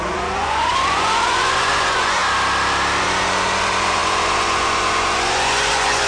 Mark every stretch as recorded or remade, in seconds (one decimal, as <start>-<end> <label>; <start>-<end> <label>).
0.0-2.2 remade; 2.2-3.0 recorded; 3.0-6.1 remade